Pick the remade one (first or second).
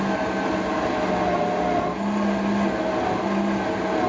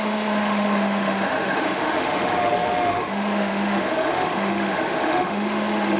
second